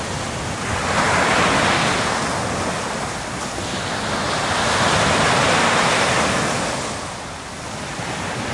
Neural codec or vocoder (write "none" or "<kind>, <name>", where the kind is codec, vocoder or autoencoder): none